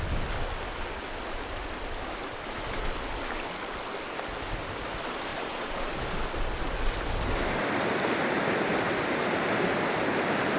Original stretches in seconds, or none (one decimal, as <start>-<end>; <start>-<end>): 0.0-5.3; 6.0-10.6